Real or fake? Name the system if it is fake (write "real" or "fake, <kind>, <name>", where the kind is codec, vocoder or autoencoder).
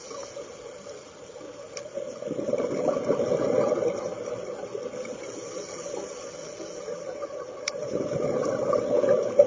real